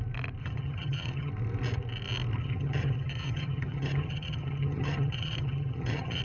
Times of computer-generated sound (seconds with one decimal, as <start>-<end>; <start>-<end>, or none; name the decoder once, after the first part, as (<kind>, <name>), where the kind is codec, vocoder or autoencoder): 0.4-1.3 (vocoder, HiFi-GAN); 2.4-6.2